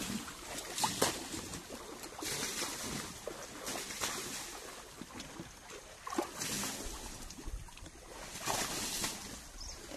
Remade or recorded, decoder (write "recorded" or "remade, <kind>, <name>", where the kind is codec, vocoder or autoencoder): recorded